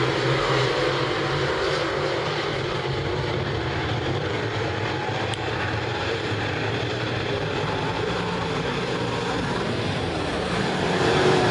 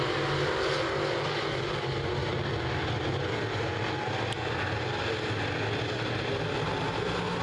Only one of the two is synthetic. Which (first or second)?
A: first